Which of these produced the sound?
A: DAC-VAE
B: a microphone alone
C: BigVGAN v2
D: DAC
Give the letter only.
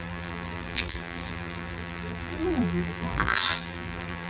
C